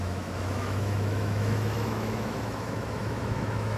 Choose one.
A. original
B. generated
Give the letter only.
B